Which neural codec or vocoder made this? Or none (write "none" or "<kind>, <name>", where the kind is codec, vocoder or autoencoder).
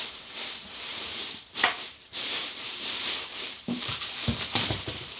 vocoder, BigVGAN v2